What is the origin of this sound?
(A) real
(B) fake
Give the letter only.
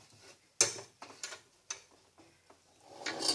A